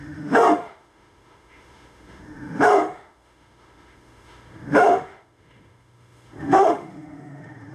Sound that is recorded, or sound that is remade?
remade